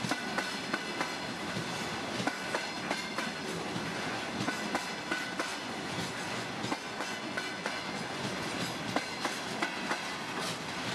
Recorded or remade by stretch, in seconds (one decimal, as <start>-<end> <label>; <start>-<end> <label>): 0.0-3.9 recorded; 3.9-4.5 remade; 4.5-5.5 recorded; 5.5-8.5 remade; 8.5-10.9 recorded